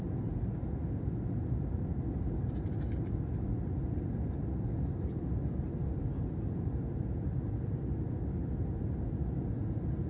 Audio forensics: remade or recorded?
recorded